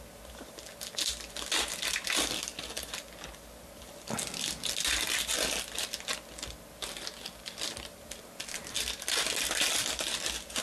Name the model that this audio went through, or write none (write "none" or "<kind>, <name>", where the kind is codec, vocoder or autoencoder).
none